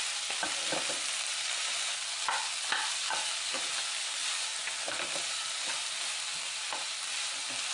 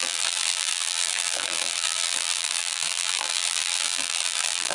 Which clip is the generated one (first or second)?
second